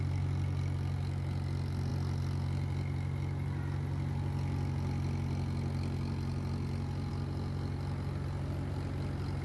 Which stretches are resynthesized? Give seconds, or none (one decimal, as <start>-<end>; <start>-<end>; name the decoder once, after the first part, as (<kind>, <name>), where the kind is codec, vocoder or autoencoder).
none